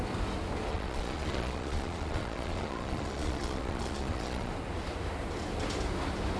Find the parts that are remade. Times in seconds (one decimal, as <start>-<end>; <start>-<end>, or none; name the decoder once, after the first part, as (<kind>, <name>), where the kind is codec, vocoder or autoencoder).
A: 0.7-4.5 (vocoder, Vocos)